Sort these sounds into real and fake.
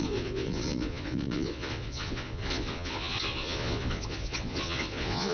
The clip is fake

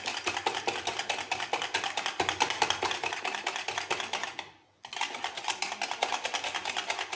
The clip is real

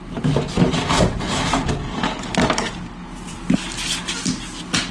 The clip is real